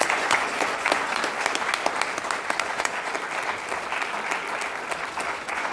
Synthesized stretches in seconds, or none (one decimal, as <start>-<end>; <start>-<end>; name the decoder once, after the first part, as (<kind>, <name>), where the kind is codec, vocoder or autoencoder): 0.0-1.2 (vocoder, Vocos); 2.6-3.1; 5.1-5.7